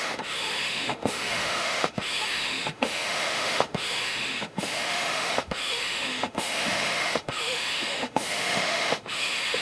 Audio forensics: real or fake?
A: fake